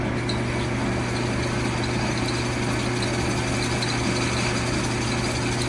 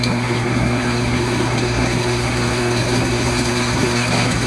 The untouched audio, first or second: first